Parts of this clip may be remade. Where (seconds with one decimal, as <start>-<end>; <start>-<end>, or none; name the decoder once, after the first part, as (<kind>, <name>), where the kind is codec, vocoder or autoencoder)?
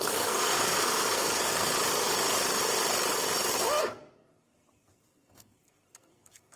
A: 0.0-1.7 (codec, SNAC); 3.8-6.6